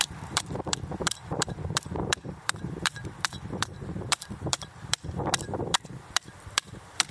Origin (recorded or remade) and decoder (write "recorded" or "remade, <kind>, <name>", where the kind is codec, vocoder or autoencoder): remade, vocoder, BigVGAN v2